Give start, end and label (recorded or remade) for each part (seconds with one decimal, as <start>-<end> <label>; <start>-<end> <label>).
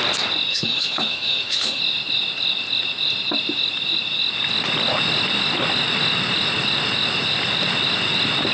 0.0-0.5 recorded; 0.5-1.8 remade; 1.8-8.5 recorded